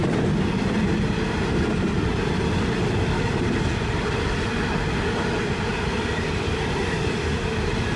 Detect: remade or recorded recorded